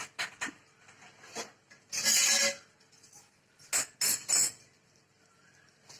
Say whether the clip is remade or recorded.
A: recorded